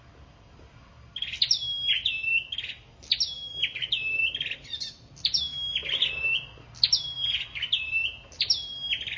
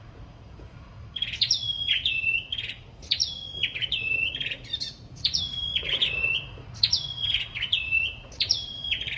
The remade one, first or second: second